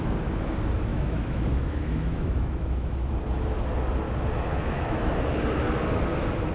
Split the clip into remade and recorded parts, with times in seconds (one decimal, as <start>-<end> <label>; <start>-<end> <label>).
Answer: 0.0-0.9 recorded; 0.9-3.1 remade; 3.1-4.5 recorded; 4.5-5.1 remade; 5.1-6.5 recorded